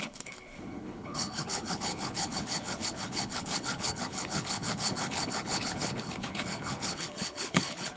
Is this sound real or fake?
fake